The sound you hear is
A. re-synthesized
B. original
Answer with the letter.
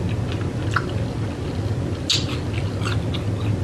B